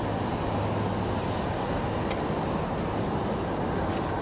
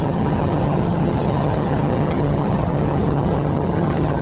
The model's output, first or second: second